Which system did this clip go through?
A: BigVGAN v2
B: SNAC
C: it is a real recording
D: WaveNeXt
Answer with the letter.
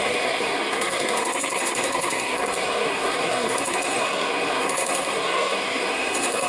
B